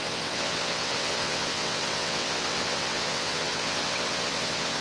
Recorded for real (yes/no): no